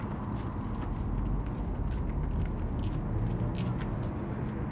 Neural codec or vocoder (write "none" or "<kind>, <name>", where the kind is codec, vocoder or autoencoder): none